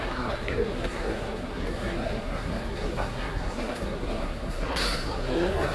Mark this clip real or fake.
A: fake